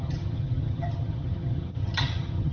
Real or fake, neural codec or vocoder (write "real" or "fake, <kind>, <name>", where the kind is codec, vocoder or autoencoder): fake, vocoder, HiFi-GAN